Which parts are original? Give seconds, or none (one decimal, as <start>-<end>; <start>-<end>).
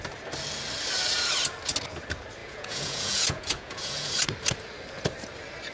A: 0.0-2.4; 4.1-5.7